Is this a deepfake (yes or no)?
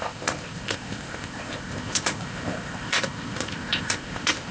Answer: yes